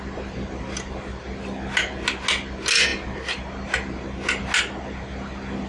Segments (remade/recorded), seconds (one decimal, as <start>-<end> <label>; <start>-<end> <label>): 0.0-5.7 recorded